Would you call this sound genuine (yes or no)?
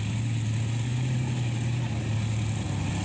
yes